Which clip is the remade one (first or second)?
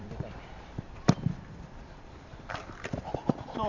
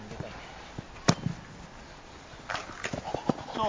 first